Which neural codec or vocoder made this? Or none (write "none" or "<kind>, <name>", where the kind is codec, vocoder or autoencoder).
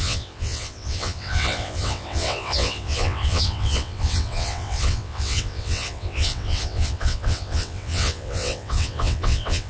vocoder, WaveNeXt